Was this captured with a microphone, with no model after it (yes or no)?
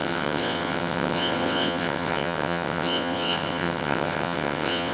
no